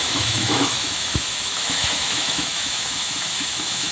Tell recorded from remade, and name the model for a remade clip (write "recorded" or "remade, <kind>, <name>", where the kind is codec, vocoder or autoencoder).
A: remade, autoencoder, DAC-VAE